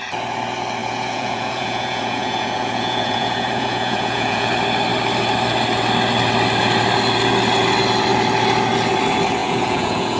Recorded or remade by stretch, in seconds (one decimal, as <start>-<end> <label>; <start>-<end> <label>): 0.0-0.8 recorded; 0.8-4.5 remade; 4.5-9.4 recorded; 9.4-10.2 remade